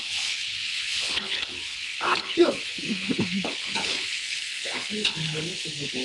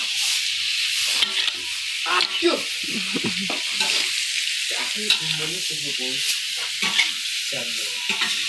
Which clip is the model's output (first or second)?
first